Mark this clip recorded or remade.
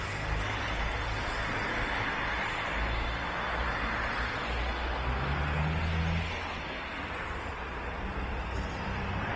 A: recorded